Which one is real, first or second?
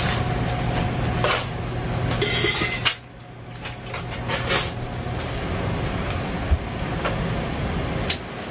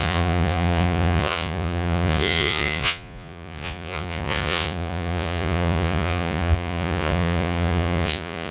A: first